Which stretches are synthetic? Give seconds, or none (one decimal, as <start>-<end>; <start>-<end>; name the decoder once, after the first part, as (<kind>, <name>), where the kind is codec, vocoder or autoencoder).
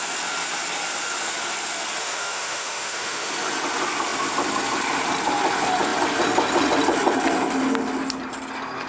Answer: 2.0-3.3 (autoencoder, DAC-VAE)